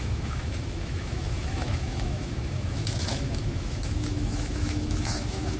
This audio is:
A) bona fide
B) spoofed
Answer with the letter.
B